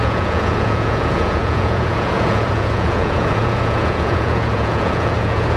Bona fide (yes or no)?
no